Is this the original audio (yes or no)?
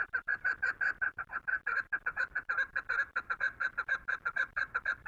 yes